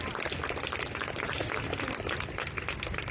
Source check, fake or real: real